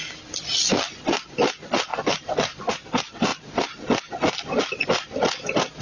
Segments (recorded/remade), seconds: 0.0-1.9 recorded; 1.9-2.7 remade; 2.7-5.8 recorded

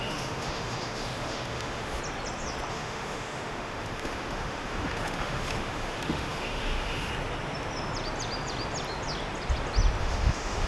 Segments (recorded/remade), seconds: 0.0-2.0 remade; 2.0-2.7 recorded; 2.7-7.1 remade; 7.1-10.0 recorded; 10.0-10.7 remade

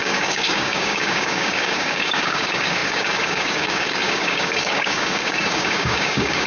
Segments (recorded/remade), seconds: 0.0-6.5 remade

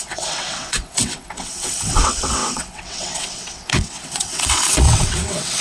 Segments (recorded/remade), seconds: 0.0-5.6 remade